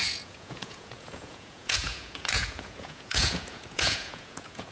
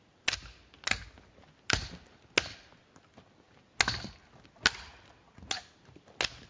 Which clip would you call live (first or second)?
second